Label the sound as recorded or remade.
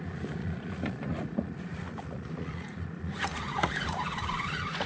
remade